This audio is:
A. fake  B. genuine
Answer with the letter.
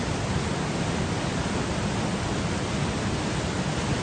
B